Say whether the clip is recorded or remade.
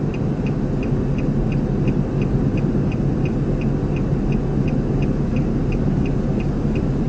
recorded